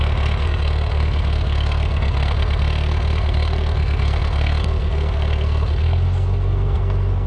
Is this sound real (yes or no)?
no